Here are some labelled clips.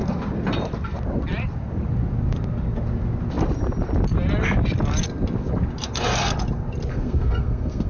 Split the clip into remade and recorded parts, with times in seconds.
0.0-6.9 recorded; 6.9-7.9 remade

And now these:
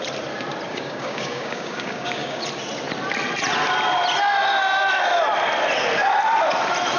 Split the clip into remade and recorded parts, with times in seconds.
0.0-0.7 recorded; 0.7-2.4 remade; 2.4-7.0 recorded

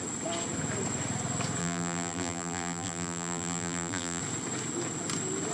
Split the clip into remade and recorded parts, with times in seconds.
0.0-1.6 recorded; 1.6-4.2 remade; 4.2-5.5 recorded

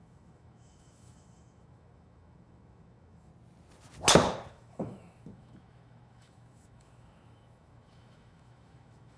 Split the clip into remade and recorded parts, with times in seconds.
0.0-3.3 remade; 3.3-4.5 recorded; 4.5-9.2 remade

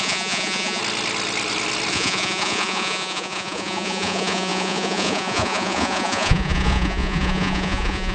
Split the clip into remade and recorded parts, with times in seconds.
0.0-0.8 remade; 0.8-1.9 recorded; 1.9-8.1 remade

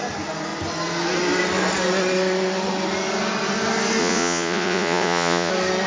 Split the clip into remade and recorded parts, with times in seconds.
0.0-4.0 recorded; 4.0-5.5 remade; 5.5-5.9 recorded

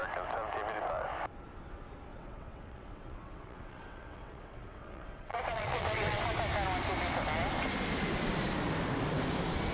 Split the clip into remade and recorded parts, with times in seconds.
0.0-2.1 recorded; 2.1-6.2 remade; 6.2-9.7 recorded